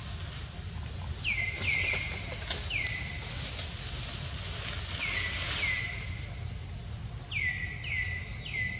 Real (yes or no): yes